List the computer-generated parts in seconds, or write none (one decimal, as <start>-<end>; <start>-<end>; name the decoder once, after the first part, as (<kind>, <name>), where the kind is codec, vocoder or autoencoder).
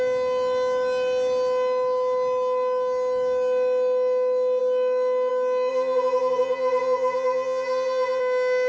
5.7-8.2 (vocoder, Vocos)